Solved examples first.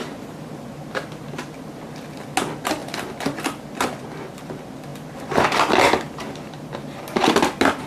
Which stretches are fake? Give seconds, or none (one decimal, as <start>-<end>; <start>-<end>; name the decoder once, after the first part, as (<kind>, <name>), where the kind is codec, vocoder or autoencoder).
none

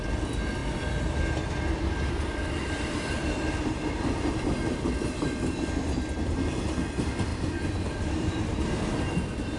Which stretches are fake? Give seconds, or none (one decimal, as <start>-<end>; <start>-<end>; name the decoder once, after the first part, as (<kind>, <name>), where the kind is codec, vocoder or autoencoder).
0.6-5.0 (vocoder, BigVGAN v2); 7.3-9.0

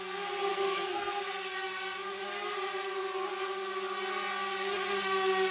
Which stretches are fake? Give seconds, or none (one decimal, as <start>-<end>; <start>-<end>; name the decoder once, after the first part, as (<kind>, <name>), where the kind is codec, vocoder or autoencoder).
0.5-1.1 (codec, SNAC)

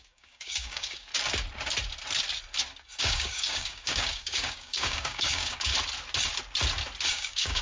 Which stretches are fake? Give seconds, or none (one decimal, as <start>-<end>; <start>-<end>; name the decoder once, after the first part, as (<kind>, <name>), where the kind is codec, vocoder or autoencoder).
0.0-1.1 (codec, DAC); 3.0-5.7; 7.1-7.6